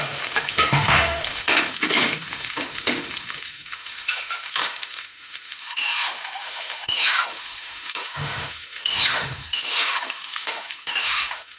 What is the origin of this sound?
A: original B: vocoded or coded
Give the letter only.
B